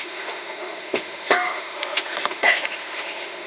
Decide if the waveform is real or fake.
fake